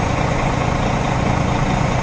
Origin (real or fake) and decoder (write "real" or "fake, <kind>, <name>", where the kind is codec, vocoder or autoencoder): fake, vocoder, Vocos